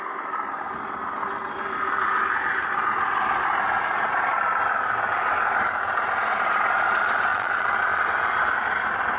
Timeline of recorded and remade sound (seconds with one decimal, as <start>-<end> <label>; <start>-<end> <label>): 0.0-7.3 recorded; 7.3-8.0 remade; 8.0-9.2 recorded